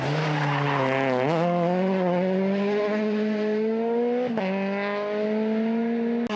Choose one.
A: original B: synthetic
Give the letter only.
A